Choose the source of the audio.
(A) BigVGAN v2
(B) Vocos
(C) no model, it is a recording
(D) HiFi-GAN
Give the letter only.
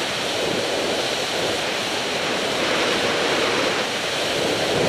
A